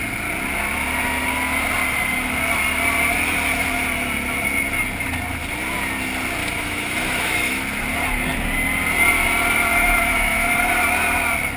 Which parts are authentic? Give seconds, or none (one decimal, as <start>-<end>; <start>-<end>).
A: 0.0-6.4; 7.6-9.7; 10.5-11.6